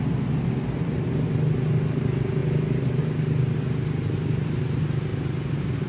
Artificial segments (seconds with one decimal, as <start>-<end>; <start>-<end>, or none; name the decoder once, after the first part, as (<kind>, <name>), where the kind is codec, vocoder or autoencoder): 2.4-3.0 (vocoder, BigVGAN v2); 5.1-5.9